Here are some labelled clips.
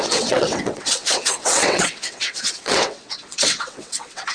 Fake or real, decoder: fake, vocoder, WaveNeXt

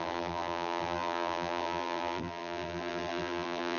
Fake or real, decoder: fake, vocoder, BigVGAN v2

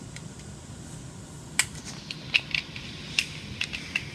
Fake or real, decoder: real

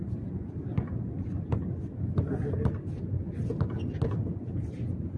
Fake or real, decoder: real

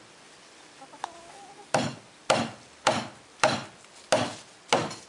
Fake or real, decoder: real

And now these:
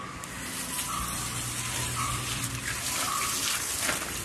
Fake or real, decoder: real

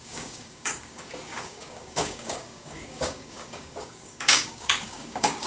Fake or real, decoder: fake, codec, DAC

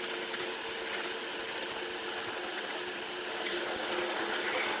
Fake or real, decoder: real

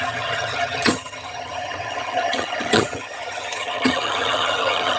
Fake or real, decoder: fake, vocoder, HiFi-GAN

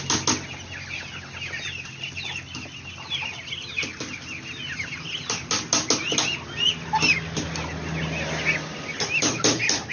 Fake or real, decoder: real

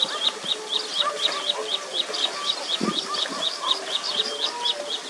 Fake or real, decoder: real